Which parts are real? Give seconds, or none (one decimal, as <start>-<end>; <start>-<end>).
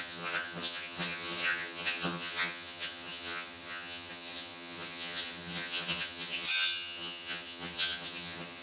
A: none